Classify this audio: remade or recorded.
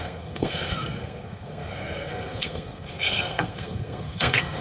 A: remade